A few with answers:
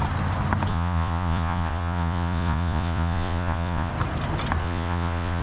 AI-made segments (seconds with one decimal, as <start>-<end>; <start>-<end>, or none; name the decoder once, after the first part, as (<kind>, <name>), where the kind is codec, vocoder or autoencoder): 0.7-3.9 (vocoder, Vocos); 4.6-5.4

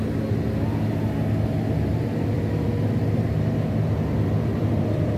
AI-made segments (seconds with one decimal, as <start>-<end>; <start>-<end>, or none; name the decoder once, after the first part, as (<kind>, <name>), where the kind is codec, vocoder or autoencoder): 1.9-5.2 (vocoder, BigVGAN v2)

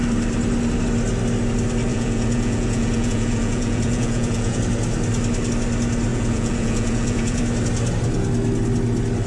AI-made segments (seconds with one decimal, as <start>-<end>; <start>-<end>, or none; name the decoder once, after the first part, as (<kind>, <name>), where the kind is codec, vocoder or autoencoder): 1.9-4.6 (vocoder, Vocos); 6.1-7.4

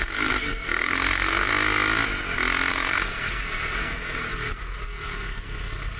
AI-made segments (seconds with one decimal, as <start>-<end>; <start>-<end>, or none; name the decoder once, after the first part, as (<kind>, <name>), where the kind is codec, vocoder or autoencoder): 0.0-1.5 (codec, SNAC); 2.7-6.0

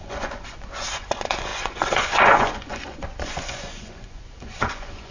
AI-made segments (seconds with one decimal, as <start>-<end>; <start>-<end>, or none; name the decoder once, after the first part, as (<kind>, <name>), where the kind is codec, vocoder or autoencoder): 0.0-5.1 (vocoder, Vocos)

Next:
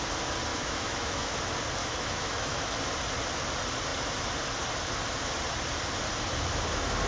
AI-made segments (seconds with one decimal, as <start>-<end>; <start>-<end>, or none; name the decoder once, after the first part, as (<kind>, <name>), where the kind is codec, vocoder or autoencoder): 0.5-1.4 (autoencoder, DAC-VAE); 1.8-2.6